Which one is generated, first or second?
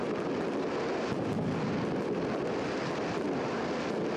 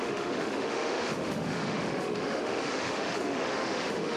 second